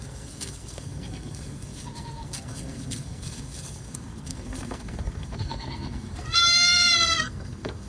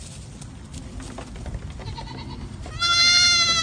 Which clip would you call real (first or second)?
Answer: second